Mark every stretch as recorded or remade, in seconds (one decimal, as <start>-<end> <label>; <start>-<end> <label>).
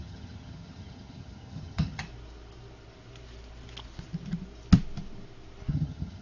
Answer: 0.0-2.0 remade; 2.0-5.7 recorded; 5.7-6.2 remade